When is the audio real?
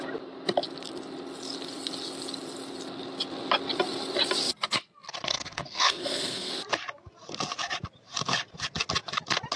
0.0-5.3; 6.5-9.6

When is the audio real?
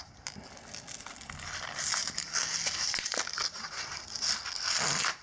0.0-5.2